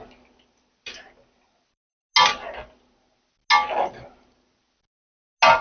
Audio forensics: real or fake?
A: real